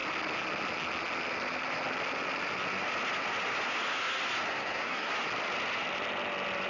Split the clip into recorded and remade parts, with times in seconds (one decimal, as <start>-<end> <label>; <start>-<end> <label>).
0.0-4.5 recorded; 4.5-5.1 remade; 5.1-6.7 recorded